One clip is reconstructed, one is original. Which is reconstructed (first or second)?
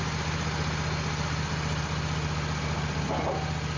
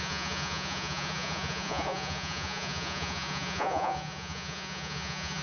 second